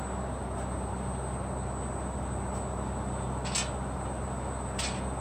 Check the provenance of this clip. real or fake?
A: real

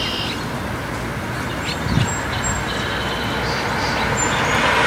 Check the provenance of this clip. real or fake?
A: real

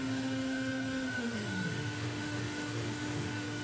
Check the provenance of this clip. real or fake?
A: fake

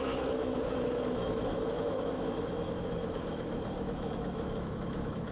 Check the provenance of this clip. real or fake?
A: fake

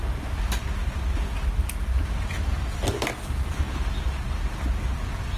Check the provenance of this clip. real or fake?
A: real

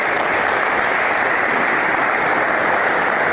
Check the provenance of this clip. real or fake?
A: real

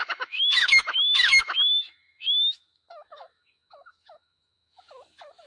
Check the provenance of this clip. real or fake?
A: fake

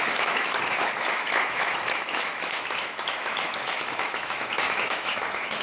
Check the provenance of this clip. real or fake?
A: fake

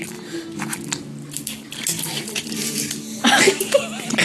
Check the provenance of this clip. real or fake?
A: real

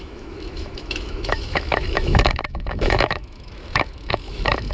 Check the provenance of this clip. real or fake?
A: fake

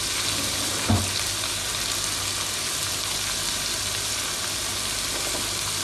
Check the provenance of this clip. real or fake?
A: real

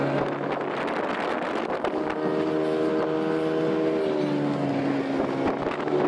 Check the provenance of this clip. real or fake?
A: real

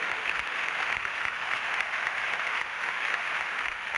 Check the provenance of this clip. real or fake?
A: fake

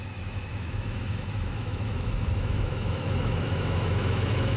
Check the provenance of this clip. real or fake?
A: fake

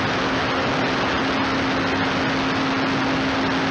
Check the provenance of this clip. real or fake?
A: real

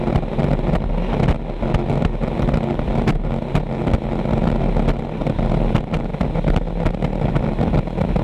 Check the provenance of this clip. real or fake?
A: real